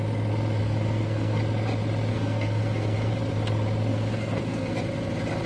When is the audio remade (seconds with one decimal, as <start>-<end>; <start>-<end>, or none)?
0.6-1.4; 2.1-3.1; 3.9-4.8